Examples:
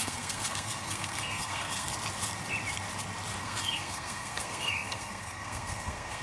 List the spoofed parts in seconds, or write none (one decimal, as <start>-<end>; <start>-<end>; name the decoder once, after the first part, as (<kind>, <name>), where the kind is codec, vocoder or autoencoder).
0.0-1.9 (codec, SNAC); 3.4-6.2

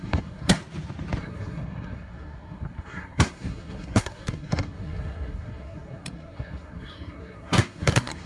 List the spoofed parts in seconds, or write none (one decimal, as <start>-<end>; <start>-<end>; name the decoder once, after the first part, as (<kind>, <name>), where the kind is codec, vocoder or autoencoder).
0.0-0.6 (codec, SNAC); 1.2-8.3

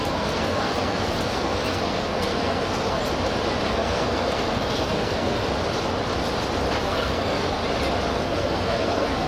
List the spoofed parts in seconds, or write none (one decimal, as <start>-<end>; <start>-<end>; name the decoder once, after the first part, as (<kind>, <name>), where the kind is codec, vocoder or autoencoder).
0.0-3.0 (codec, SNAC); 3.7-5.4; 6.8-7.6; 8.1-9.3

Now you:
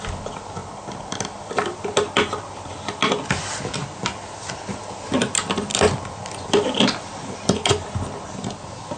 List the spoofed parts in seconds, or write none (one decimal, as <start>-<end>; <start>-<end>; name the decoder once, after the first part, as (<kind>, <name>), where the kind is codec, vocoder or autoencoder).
none

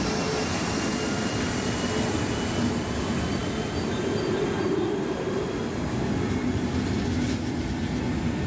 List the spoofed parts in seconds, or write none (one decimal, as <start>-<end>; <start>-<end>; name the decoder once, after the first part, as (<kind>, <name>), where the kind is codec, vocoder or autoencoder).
none

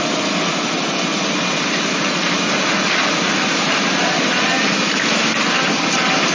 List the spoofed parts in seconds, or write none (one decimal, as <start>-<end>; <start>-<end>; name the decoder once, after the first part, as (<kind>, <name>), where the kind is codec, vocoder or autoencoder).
none

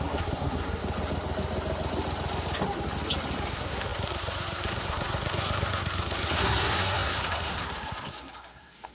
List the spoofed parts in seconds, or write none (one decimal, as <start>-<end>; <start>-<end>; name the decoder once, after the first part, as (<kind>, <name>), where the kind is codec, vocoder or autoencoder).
0.0-0.8 (codec, SNAC); 3.5-8.9

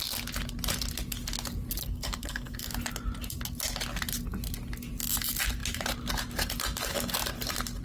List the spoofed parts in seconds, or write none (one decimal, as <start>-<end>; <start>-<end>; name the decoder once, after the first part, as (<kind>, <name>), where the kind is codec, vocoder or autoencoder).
1.8-2.7 (codec, SNAC)